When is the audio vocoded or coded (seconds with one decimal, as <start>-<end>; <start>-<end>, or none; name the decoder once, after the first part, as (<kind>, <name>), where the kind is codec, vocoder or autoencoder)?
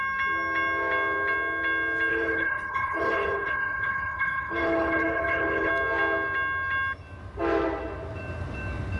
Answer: 2.1-5.7 (codec, HILCodec)